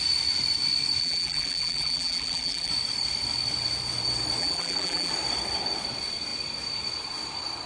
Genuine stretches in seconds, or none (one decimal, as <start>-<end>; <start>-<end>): 0.0-1.0; 2.7-4.4; 5.1-7.7